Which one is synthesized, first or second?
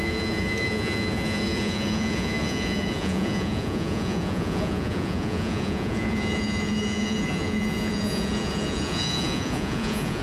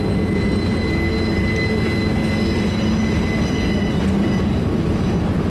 first